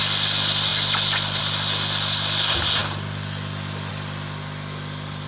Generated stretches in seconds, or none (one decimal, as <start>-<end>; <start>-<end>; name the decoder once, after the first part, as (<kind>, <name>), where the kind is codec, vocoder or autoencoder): none

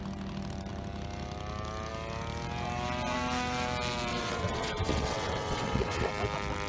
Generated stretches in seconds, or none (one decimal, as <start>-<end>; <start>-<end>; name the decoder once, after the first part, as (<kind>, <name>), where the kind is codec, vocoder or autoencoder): 4.1-6.1 (vocoder, WaveNeXt)

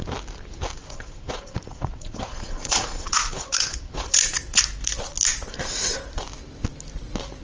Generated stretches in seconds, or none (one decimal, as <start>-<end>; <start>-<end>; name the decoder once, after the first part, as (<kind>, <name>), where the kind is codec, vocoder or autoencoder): 0.8-4.6 (vocoder, Vocos)

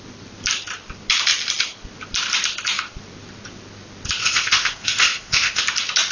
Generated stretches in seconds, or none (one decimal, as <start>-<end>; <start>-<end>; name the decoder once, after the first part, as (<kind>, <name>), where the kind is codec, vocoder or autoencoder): 4.2-5.6 (codec, ZipCodec)

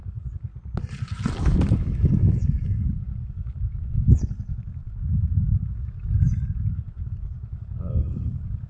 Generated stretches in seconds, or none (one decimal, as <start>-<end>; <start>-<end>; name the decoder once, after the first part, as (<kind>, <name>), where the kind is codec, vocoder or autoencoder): 0.0-0.5 (codec, DAC); 1.4-8.7

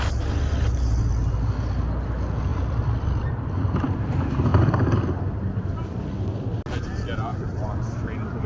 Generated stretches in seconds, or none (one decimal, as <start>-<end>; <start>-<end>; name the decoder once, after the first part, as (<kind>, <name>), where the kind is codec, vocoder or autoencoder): 2.5-3.6 (vocoder, BigVGAN v2); 4.5-6.0